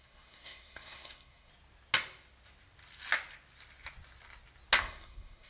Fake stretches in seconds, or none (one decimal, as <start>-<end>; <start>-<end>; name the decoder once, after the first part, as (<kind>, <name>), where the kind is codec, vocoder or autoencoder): 0.0-1.5 (codec, SNAC); 4.8-5.5